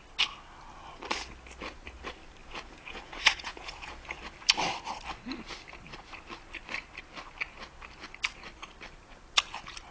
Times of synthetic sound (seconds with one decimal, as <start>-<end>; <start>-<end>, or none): 2.4-4.2

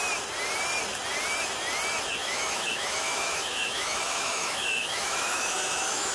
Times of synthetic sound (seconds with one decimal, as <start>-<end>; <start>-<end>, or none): 2.2-6.1

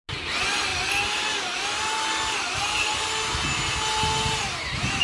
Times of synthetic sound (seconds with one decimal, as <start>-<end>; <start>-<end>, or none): none